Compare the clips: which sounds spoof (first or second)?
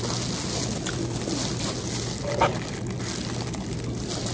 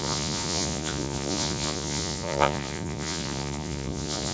second